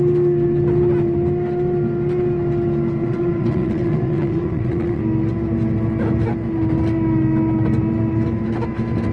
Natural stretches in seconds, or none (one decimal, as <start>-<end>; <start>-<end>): 0.0-3.0; 5.0-9.1